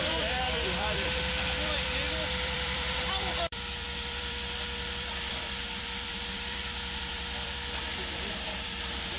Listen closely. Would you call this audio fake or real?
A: fake